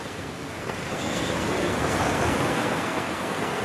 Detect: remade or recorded remade